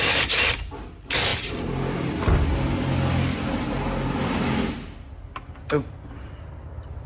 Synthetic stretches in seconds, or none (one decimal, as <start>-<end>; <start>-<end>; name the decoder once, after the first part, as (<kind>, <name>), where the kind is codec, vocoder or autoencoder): none